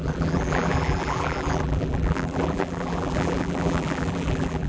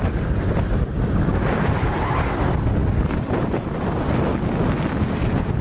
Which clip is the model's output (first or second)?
first